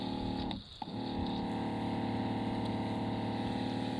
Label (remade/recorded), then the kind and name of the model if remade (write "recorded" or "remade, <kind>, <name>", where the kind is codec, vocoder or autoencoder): recorded